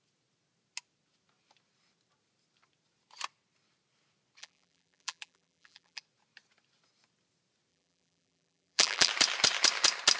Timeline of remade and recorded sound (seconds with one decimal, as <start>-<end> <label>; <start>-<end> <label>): 0.0-4.4 recorded; 4.4-6.0 remade; 6.0-7.7 recorded; 7.7-9.1 remade; 9.1-10.2 recorded